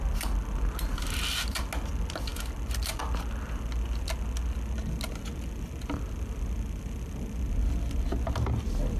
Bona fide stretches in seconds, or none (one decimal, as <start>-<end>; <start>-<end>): 0.0-9.0

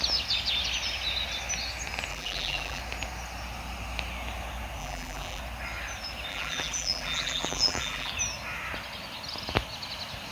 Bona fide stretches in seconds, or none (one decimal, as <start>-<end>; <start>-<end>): 0.0-2.1; 2.8-4.8; 5.4-6.3; 8.1-10.3

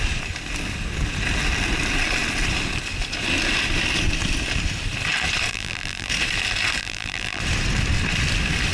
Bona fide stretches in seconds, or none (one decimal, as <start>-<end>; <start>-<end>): 0.0-5.5; 6.1-6.8; 7.4-8.7